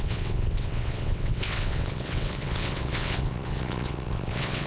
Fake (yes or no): yes